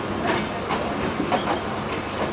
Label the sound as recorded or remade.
recorded